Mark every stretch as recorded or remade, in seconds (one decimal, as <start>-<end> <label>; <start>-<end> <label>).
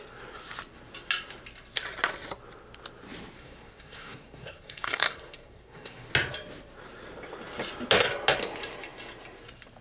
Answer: 0.0-3.4 recorded; 3.4-6.1 remade; 6.1-9.8 recorded